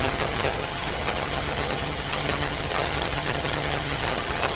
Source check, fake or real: fake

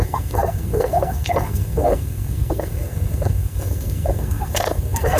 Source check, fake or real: fake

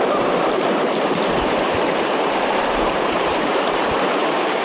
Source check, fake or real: fake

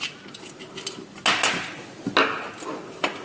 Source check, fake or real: real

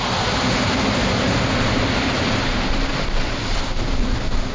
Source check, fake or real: real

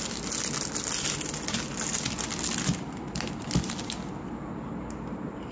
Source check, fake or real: real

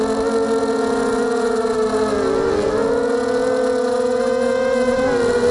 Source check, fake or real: real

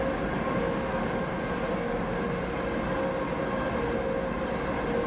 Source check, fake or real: real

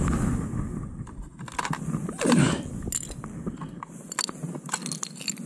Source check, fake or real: real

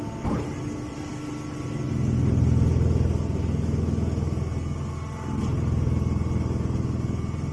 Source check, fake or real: real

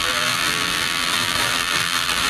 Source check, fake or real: fake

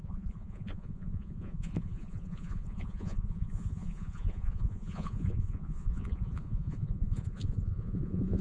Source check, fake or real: fake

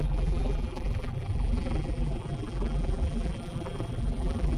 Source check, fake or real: fake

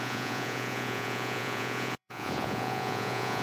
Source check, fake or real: fake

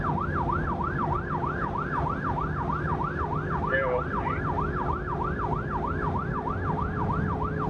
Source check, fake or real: real